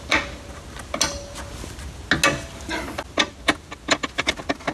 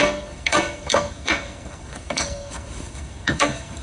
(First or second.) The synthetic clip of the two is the second